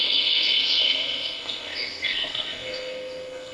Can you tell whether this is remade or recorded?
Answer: remade